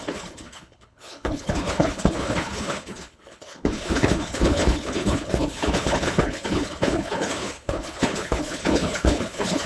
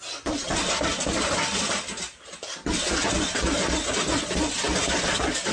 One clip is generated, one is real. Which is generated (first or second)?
first